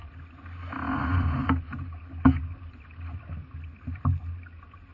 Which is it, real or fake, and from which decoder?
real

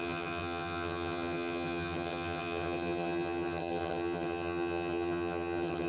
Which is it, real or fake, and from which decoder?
fake, vocoder, HiFi-GAN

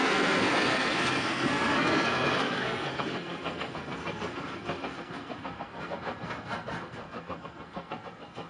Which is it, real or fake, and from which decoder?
fake, codec, SNAC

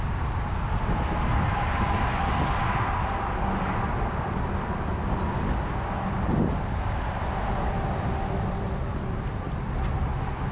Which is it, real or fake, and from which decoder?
real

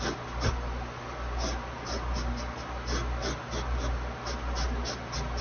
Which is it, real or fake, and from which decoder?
real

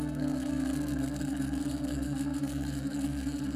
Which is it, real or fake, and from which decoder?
fake, codec, SNAC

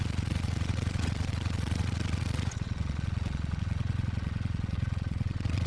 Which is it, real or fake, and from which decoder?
fake, vocoder, Vocos